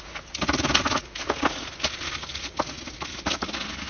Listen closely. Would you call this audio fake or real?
real